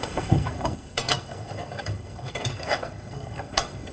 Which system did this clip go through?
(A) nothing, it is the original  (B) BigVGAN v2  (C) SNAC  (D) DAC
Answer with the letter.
C